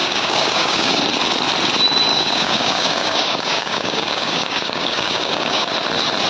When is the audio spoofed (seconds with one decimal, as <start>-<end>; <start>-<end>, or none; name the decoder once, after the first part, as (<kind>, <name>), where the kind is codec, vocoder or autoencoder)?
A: 0.0-1.0 (codec, DAC); 2.1-5.7